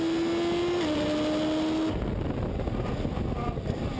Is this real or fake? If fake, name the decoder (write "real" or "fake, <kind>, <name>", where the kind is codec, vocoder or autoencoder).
real